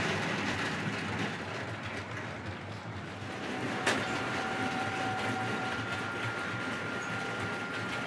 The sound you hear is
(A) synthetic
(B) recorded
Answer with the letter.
B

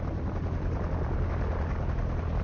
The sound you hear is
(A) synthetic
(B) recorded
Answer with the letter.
B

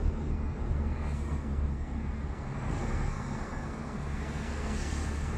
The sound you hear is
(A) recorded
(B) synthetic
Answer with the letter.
B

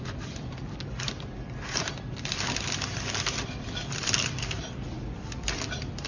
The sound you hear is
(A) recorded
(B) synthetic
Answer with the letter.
B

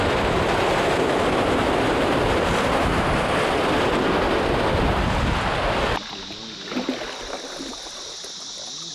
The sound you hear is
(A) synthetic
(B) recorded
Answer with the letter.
B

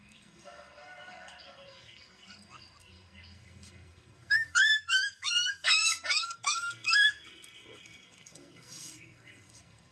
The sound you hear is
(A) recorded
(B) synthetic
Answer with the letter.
B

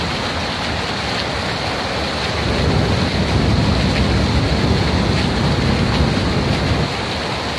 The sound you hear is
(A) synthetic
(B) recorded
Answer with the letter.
B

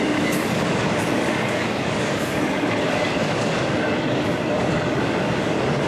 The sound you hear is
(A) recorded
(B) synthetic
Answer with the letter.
B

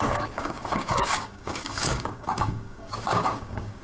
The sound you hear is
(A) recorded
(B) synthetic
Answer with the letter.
B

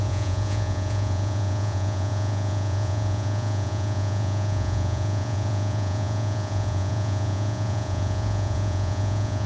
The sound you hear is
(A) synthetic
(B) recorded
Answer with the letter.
A